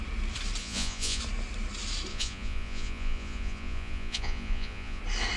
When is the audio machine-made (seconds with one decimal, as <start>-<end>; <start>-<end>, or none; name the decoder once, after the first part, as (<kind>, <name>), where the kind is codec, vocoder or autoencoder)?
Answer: 0.6-1.2 (vocoder, Vocos); 2.1-5.0